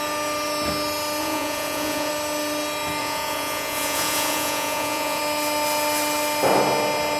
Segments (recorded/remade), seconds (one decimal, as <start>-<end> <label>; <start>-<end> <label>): 0.0-1.2 recorded; 1.2-2.1 remade; 2.1-3.0 recorded; 3.0-5.2 remade; 5.2-7.2 recorded